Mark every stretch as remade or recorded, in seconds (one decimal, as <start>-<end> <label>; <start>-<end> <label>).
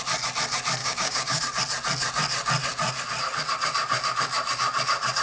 0.0-0.8 recorded; 0.8-1.4 remade; 1.4-5.2 recorded